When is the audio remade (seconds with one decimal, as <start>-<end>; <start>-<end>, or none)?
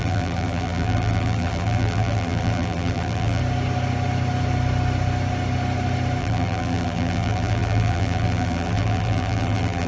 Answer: 0.0-3.4; 6.2-9.9